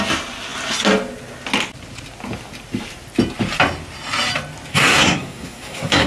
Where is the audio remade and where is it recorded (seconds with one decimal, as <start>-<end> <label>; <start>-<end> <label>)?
0.0-4.7 recorded; 4.7-6.1 remade

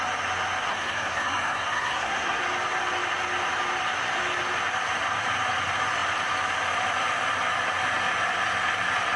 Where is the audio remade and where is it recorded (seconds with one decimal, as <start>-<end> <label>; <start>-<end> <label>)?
0.0-0.7 recorded; 0.7-2.4 remade; 2.4-9.2 recorded

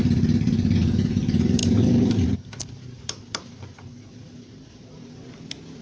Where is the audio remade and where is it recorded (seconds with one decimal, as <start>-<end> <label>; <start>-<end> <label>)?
0.0-1.6 recorded; 1.6-5.1 remade; 5.1-5.8 recorded